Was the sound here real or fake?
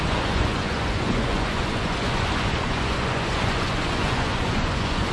fake